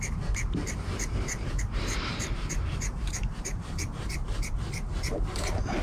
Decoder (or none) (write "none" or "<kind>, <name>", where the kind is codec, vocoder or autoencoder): vocoder, BigVGAN v2